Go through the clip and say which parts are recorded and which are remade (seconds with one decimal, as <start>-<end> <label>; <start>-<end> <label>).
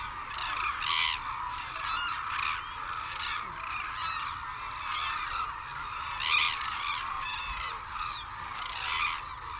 0.0-9.6 recorded